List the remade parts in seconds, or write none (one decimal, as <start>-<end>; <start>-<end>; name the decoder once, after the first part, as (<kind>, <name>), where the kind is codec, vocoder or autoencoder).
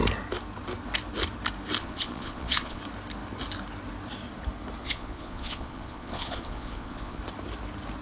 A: 1.8-2.8 (vocoder, Vocos); 4.8-7.2